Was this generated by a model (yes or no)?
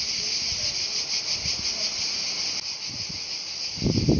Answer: no